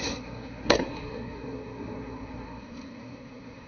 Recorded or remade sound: remade